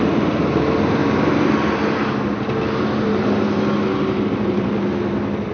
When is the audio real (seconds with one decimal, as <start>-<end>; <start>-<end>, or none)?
1.0-4.3